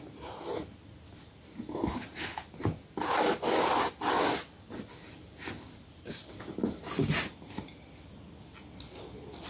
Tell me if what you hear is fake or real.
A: real